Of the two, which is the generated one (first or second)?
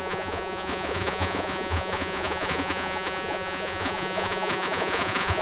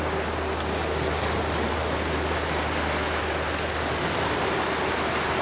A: first